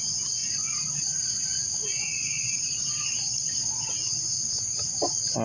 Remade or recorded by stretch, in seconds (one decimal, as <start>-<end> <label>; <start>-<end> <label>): 0.0-0.4 recorded; 0.4-1.4 remade; 1.4-1.9 recorded; 1.9-3.9 remade; 3.9-5.4 recorded

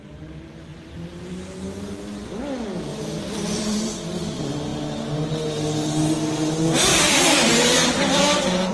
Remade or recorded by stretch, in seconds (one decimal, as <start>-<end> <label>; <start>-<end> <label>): 0.0-0.7 recorded; 0.7-1.3 remade; 1.3-2.9 recorded; 2.9-4.0 remade; 4.0-6.9 recorded; 6.9-8.2 remade; 8.2-8.7 recorded

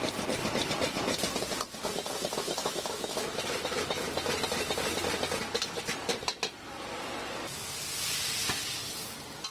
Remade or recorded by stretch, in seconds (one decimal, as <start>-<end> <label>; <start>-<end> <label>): 0.0-2.6 recorded; 2.6-3.8 remade; 3.8-9.5 recorded